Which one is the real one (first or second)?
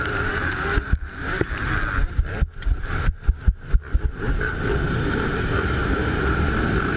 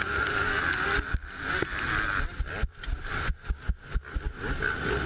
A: second